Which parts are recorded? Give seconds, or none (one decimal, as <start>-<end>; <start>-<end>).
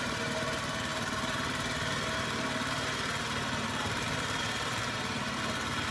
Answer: none